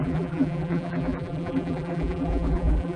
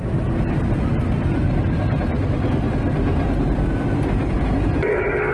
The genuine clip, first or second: second